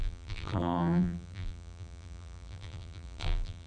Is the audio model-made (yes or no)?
yes